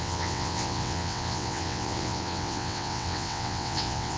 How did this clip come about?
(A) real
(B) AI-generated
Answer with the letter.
B